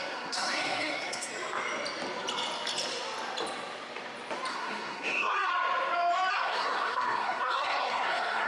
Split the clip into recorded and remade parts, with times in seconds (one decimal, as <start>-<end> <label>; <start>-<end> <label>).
0.0-1.3 remade; 1.3-4.5 recorded; 4.5-5.5 remade; 5.5-6.3 recorded; 6.3-8.5 remade